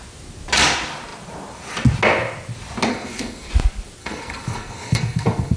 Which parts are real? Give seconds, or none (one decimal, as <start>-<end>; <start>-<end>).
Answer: 0.0-2.9; 3.5-4.0